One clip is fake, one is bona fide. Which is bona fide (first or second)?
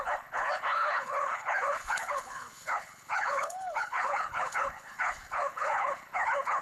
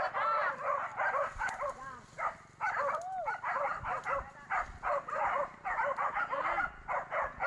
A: second